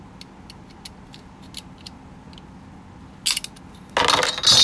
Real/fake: real